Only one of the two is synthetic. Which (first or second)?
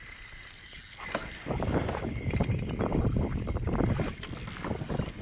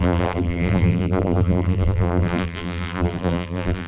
second